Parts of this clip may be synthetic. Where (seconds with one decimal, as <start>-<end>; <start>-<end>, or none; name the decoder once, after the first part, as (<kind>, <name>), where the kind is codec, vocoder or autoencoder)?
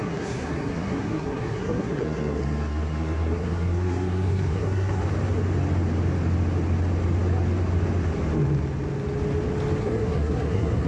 0.0-5.0 (codec, SNAC); 9.8-10.9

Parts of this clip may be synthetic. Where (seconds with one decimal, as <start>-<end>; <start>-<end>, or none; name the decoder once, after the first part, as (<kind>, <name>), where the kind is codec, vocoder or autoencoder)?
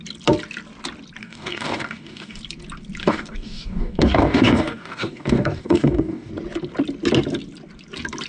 1.2-2.4 (codec, DAC); 3.0-6.3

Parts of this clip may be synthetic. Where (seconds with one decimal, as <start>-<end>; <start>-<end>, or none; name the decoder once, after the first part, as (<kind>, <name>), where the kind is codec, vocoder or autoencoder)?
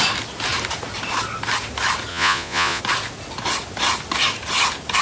2.1-2.8 (vocoder, Vocos)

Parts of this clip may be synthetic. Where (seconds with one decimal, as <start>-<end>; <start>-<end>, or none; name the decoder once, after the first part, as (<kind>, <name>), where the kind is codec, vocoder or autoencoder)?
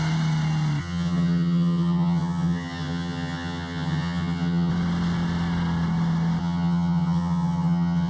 0.8-4.7 (vocoder, HiFi-GAN); 6.4-8.1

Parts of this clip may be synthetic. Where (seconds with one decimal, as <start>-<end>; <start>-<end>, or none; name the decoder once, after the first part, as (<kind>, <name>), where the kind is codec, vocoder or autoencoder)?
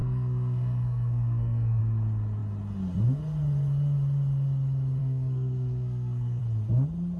0.0-1.8 (codec, SNAC); 5.0-6.4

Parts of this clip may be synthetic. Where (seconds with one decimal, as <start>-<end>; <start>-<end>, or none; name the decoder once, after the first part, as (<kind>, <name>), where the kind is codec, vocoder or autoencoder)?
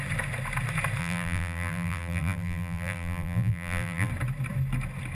1.0-4.1 (vocoder, BigVGAN v2)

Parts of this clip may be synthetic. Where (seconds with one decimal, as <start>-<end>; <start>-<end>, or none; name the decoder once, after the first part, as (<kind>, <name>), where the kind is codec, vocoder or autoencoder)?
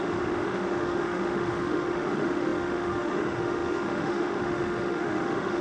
0.0-5.6 (autoencoder, DAC-VAE)